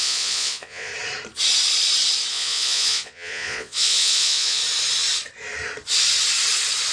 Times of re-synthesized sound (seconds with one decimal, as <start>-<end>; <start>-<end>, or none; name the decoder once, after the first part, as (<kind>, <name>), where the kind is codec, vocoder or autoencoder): 0.0-0.9 (vocoder, Vocos); 2.3-4.6